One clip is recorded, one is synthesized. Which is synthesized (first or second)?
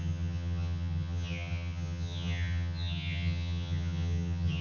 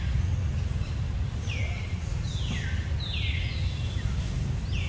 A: first